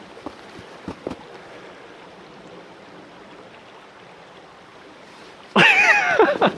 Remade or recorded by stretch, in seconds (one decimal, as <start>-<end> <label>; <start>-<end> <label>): 0.0-6.6 recorded